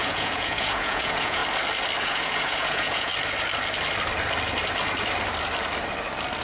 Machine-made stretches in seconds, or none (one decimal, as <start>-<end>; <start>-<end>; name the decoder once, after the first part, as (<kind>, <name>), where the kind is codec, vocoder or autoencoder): 0.0-1.4 (vocoder, Vocos); 2.0-3.1